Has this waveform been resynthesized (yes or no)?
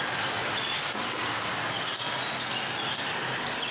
no